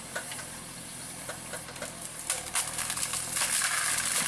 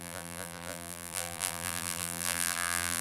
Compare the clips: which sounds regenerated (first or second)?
second